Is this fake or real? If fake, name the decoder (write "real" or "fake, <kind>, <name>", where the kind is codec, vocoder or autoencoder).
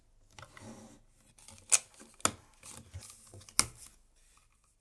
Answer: real